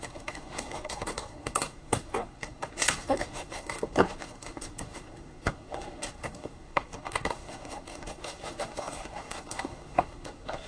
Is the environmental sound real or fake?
fake